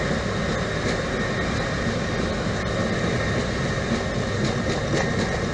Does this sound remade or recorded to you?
recorded